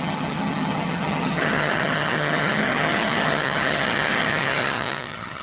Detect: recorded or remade remade